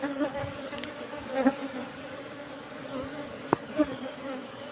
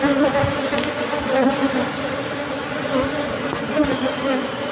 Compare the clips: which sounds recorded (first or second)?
second